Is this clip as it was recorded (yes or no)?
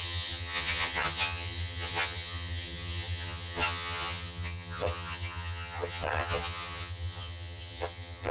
no